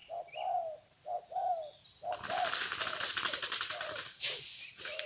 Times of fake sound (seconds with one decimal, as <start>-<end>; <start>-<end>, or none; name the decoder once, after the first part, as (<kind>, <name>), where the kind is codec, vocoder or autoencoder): none